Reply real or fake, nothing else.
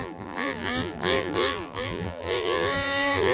fake